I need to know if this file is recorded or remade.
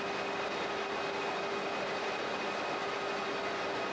recorded